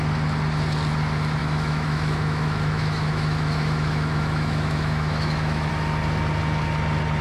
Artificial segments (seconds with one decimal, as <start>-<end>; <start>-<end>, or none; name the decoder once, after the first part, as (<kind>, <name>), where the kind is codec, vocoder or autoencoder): 1.4-5.7 (autoencoder, DAC-VAE)